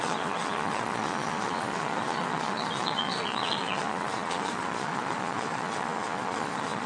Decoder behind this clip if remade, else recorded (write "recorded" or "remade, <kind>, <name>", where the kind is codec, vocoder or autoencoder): remade, vocoder, Vocos